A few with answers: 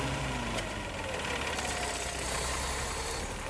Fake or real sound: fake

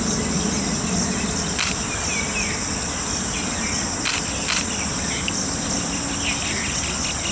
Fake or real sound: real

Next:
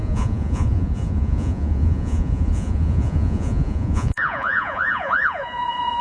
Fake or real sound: fake